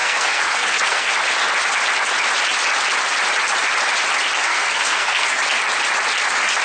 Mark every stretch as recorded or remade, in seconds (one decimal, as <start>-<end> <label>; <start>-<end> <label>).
0.0-1.1 remade; 1.1-4.4 recorded; 4.4-5.4 remade; 5.4-6.6 recorded